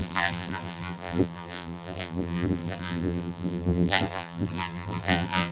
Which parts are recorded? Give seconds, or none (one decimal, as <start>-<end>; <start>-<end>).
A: none